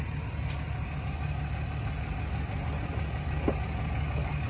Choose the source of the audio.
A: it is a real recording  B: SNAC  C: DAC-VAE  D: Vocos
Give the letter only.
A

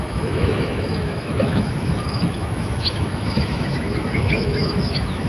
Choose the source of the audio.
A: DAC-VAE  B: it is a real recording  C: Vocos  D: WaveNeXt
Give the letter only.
A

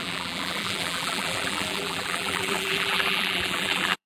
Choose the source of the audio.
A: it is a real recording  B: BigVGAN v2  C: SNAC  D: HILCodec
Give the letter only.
B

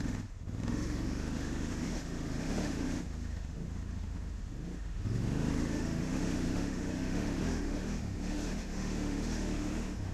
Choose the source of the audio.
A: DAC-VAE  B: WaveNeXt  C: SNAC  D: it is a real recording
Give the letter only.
A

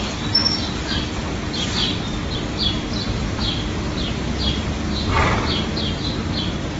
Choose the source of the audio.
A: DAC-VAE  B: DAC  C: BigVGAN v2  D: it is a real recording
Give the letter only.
D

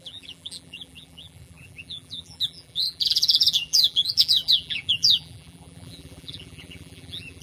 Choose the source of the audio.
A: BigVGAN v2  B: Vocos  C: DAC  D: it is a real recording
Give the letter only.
A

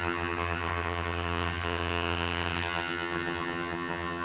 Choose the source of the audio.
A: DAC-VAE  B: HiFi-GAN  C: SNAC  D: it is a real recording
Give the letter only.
B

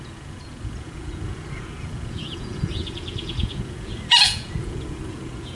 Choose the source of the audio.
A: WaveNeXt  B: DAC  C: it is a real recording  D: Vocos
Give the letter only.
D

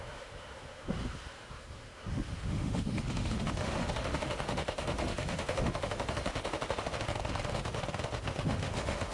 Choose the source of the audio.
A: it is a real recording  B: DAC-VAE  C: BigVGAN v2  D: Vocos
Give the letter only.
B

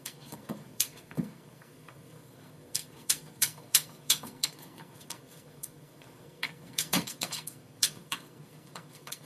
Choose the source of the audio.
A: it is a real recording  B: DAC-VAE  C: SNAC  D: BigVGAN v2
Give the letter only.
C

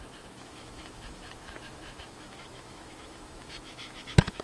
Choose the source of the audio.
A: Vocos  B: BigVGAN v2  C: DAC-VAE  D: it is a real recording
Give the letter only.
C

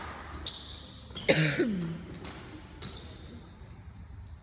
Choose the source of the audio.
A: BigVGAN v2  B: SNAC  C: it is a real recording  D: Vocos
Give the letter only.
C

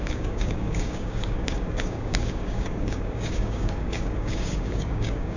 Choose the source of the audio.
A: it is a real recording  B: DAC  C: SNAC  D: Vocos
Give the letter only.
B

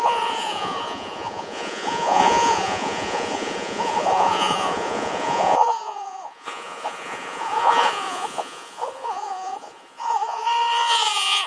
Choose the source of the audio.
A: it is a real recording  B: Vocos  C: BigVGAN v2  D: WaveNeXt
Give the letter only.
B